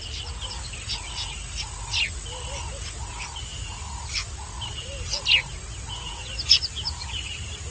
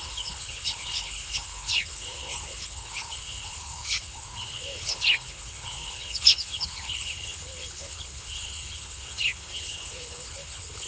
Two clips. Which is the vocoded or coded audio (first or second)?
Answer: second